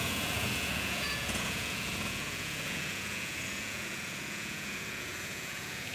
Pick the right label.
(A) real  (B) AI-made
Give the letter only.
B